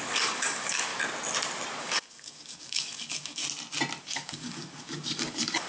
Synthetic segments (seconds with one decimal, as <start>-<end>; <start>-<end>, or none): 0.0-0.9; 1.8-3.4; 4.0-5.7